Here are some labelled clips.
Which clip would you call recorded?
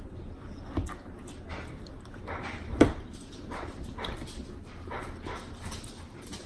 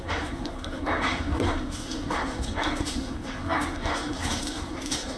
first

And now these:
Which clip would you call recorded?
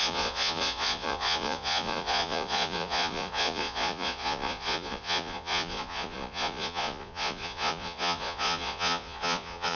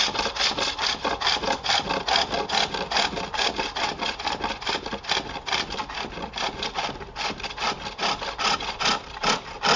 second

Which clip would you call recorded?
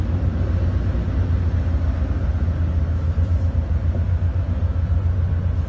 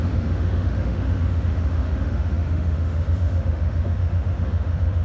first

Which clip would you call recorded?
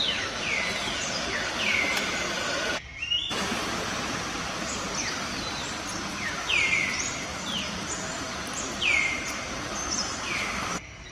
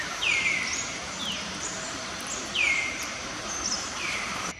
first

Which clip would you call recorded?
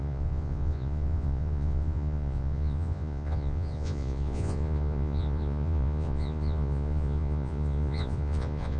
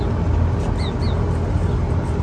second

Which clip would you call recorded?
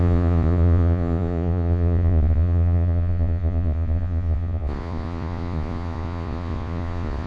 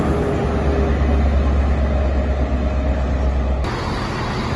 second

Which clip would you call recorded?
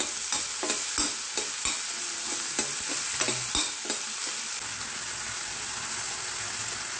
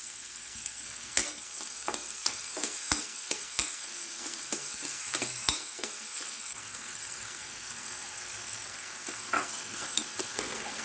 first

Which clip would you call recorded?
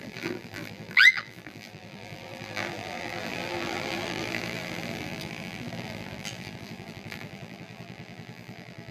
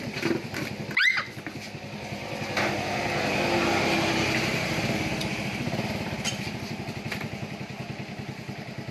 second